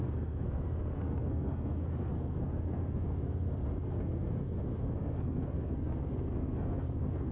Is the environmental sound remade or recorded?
remade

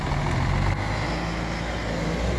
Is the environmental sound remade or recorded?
recorded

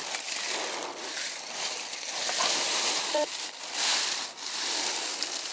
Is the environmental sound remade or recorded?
remade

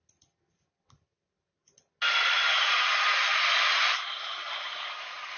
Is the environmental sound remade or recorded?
recorded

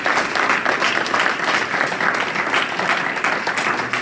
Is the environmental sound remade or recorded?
recorded